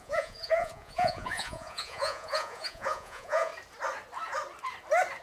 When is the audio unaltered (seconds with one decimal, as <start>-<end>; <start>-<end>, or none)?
3.5-5.2

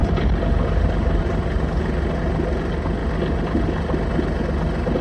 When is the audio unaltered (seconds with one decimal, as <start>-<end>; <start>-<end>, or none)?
0.0-5.0

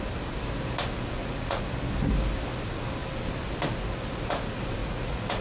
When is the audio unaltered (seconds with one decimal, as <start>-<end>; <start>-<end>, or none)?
0.0-1.2; 1.7-4.8

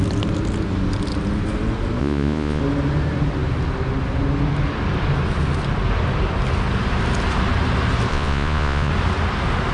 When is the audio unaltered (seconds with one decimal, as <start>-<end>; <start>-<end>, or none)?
0.0-2.0; 2.6-8.1; 8.9-9.7

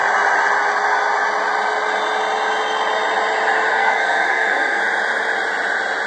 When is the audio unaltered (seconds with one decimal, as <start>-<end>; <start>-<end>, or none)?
0.0-3.7; 4.8-6.1

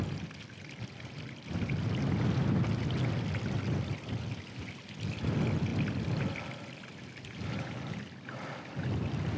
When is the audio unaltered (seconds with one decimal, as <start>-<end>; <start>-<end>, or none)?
0.0-9.4

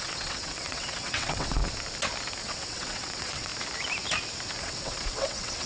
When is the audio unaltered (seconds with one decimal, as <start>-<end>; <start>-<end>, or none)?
1.6-2.4; 3.5-4.6